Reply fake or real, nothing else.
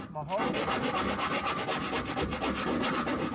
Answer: real